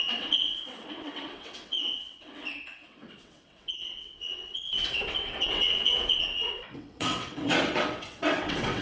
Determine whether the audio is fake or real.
fake